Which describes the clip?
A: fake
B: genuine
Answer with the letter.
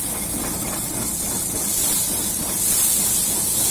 B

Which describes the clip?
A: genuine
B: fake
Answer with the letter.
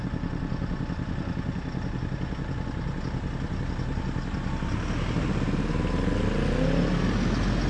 A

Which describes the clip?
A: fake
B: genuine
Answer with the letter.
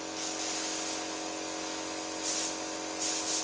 B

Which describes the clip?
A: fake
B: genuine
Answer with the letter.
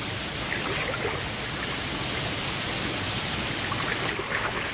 B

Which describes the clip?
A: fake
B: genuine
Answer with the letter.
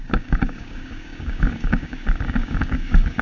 A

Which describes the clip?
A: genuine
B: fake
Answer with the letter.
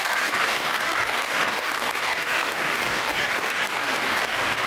B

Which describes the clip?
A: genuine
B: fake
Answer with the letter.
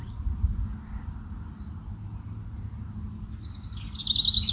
A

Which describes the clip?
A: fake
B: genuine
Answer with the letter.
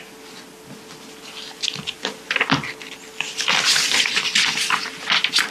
B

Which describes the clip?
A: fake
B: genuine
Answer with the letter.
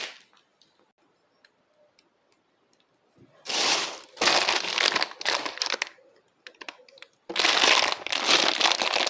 B